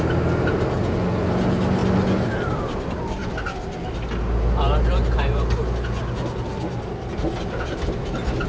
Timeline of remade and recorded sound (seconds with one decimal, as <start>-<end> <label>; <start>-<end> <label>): 0.0-8.5 recorded